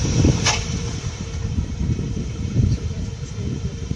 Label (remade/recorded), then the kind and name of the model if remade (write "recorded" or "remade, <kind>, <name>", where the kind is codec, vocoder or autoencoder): remade, vocoder, BigVGAN v2